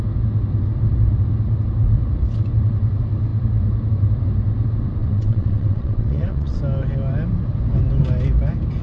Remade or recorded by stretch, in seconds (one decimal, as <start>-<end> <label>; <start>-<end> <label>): 0.0-5.0 recorded; 5.0-6.6 remade; 6.6-8.8 recorded